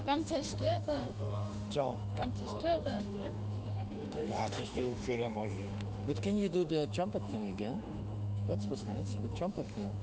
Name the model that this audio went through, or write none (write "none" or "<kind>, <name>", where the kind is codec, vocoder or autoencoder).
autoencoder, DAC-VAE